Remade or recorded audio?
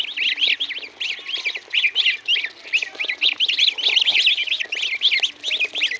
recorded